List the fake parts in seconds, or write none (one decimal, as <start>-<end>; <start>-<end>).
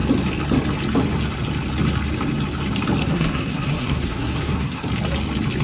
3.0-4.9